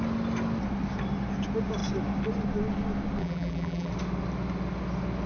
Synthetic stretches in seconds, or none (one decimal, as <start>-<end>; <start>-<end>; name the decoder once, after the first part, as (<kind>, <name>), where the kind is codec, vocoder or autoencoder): 3.2-3.9 (vocoder, BigVGAN v2)